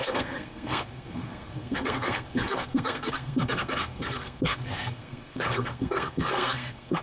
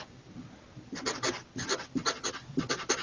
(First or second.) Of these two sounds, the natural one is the second